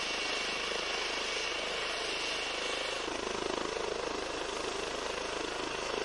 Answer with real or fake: real